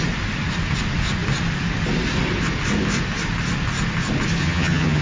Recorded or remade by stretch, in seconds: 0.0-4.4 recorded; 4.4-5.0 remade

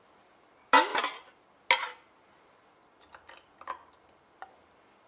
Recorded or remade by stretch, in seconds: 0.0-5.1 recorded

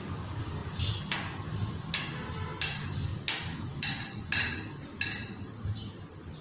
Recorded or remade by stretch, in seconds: 0.0-6.4 recorded